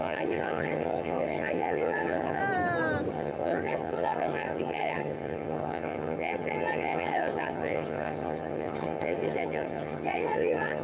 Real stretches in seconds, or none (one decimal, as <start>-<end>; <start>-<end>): 2.4-3.1